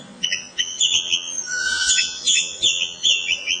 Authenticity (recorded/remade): remade